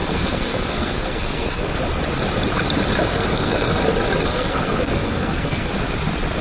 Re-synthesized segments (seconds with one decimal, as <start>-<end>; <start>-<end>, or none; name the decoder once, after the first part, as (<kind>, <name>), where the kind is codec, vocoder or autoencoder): 0.0-1.8 (codec, SNAC); 3.1-3.8; 4.2-5.7